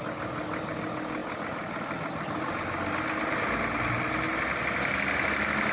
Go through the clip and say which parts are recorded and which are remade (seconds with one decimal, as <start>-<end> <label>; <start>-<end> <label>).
0.0-5.7 recorded